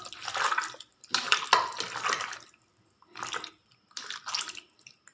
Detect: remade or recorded recorded